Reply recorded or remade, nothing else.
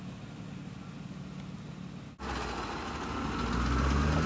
recorded